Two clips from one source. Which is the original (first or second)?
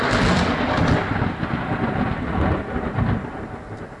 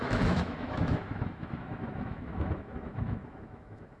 first